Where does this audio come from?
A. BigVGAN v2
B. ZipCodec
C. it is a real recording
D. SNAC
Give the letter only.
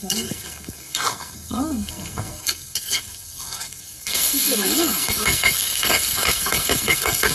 D